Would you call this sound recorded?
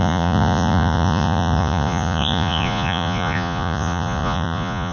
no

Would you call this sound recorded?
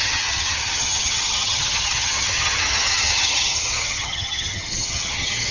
no